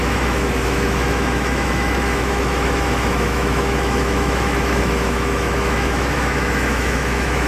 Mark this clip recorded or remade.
remade